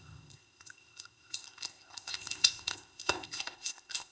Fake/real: fake